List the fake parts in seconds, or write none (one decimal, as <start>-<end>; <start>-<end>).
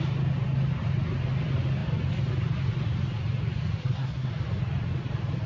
3.8-4.3